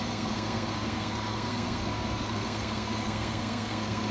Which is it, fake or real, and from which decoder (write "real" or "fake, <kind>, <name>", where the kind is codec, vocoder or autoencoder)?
fake, codec, SNAC